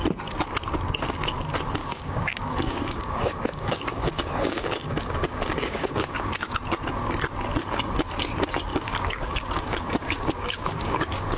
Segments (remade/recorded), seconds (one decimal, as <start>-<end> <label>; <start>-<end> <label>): 0.0-1.8 recorded; 1.8-6.5 remade; 6.5-8.7 recorded; 8.7-11.4 remade